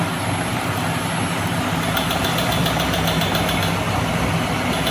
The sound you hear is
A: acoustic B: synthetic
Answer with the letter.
A